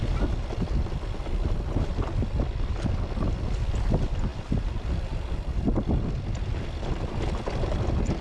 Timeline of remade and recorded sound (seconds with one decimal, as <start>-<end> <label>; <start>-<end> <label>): 0.0-8.2 recorded